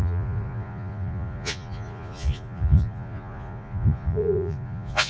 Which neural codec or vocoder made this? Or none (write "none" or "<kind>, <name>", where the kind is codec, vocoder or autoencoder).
vocoder, Vocos